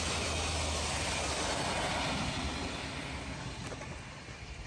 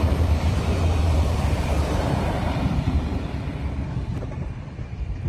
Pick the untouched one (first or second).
first